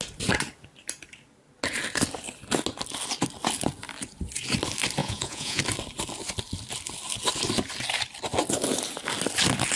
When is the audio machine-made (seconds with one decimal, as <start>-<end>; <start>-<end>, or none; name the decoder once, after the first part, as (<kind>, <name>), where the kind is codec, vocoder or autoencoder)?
5.0-5.6 (vocoder, Vocos)